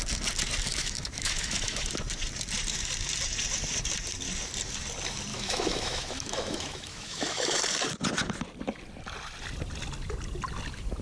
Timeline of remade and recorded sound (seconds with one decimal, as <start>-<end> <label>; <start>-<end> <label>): 0.0-0.7 recorded; 0.7-1.9 remade; 1.9-5.3 recorded; 5.3-7.6 remade; 7.6-11.0 recorded